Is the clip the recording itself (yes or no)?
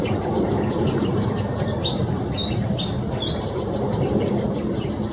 yes